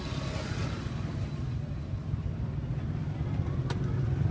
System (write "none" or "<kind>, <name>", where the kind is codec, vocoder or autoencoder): none